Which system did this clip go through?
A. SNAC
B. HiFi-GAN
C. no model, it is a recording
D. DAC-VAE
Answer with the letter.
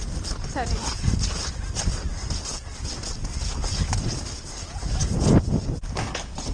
C